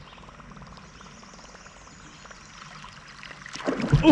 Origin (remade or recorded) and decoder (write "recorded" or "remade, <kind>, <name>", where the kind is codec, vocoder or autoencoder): recorded